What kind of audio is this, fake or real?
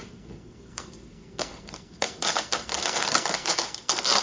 fake